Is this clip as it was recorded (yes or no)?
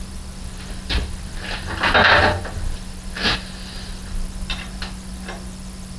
yes